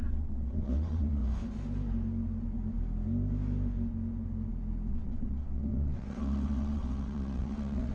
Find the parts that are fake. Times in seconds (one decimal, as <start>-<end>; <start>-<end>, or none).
0.0-1.2; 4.9-7.9